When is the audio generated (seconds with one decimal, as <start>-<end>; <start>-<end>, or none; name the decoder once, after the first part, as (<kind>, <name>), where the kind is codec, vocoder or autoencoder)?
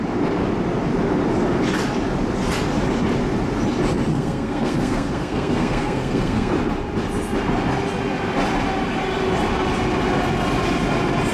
4.1-6.5 (codec, SNAC)